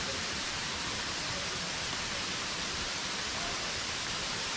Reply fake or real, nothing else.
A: fake